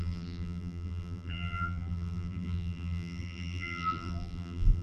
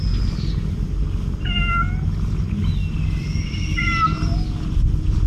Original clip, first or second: second